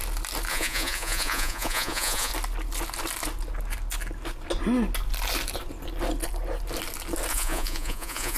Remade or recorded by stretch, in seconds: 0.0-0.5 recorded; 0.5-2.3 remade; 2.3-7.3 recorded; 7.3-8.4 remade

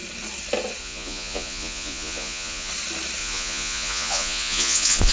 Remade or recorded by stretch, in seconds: 0.0-0.8 recorded; 0.8-2.7 remade; 2.7-3.2 recorded; 3.2-5.1 remade

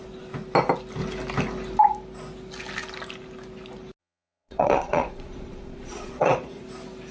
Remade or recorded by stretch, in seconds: 0.0-4.0 recorded; 4.0-6.6 remade; 6.6-7.1 recorded